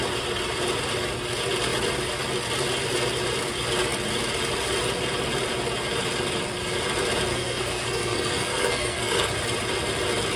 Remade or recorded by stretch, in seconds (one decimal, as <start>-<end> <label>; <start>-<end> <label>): 0.0-7.3 recorded; 7.3-9.3 remade; 9.3-10.4 recorded